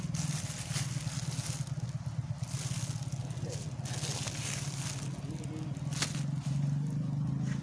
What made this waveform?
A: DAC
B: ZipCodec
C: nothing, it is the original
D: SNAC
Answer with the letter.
C